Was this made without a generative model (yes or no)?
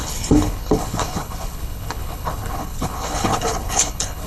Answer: no